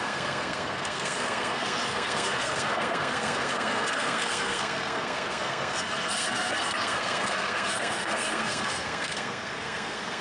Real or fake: fake